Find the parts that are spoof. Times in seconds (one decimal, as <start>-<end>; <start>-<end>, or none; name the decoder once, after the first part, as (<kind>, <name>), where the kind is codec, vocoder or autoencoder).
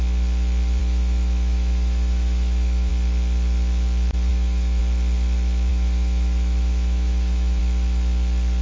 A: 0.8-2.9 (autoencoder, DAC-VAE); 4.3-4.8; 5.7-7.6